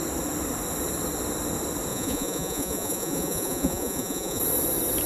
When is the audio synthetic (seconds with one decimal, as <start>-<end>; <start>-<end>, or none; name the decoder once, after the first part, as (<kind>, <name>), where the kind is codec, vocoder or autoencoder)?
1.9-4.4 (vocoder, Vocos)